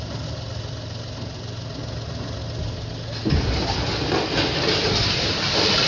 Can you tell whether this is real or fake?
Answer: real